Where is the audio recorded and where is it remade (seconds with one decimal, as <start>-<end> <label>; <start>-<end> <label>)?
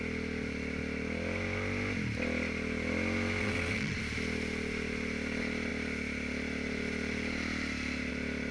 0.0-3.4 recorded; 3.4-4.0 remade; 4.0-8.5 recorded